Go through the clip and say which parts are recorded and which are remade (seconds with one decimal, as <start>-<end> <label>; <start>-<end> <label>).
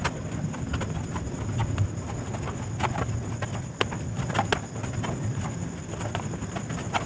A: 0.0-7.1 recorded